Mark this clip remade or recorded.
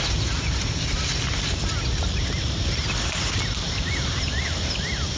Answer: recorded